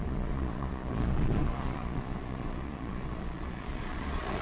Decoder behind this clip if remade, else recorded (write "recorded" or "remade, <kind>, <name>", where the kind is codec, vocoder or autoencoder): remade, vocoder, Vocos